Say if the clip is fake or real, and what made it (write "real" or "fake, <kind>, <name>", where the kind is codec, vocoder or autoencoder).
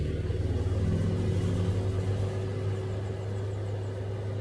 real